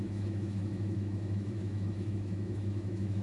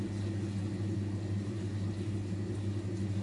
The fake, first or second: first